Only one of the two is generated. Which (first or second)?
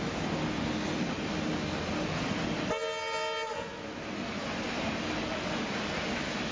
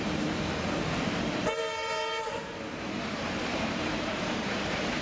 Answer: second